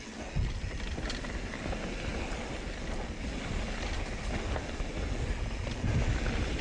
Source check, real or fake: real